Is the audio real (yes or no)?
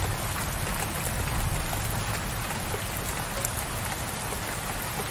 yes